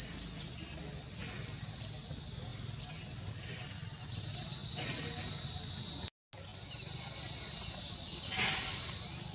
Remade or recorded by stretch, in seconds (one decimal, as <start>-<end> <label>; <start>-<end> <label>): 0.0-9.3 recorded